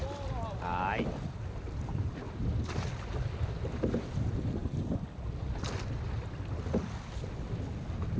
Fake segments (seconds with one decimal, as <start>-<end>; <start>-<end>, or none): none